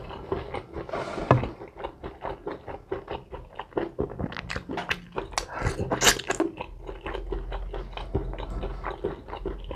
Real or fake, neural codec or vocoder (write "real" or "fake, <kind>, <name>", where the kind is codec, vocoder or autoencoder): real